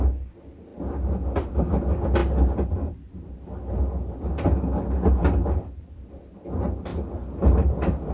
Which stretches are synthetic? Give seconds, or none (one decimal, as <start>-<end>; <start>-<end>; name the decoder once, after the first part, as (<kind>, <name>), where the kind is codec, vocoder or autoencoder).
0.7-1.5 (vocoder, BigVGAN v2); 5.4-6.1; 6.9-8.1